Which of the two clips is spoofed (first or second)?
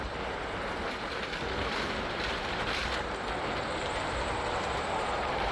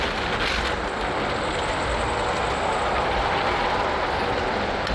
first